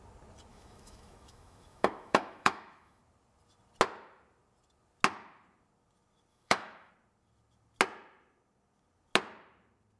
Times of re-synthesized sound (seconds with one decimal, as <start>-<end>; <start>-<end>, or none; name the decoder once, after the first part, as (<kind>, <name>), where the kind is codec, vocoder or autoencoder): 0.5-3.0 (autoencoder, DAC-VAE); 6.3-6.9